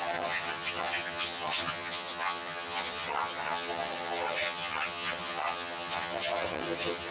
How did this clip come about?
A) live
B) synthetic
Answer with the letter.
B